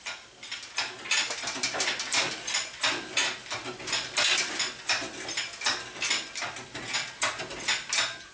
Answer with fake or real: real